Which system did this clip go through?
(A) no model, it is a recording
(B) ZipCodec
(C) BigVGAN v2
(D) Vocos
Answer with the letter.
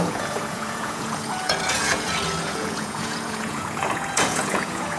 D